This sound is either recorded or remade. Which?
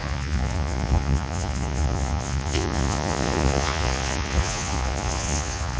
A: remade